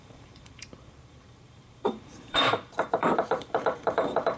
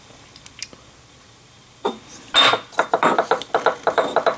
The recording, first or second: second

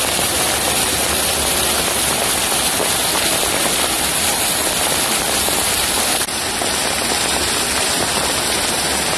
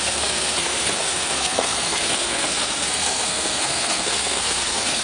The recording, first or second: first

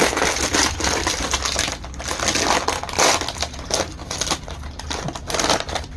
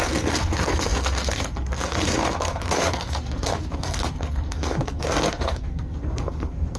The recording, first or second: first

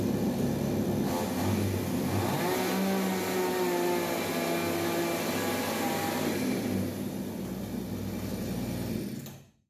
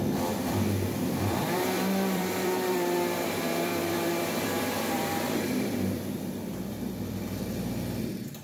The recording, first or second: first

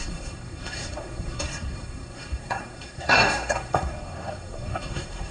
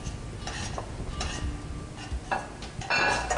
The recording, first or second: second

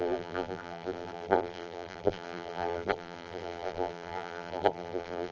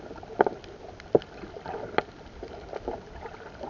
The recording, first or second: second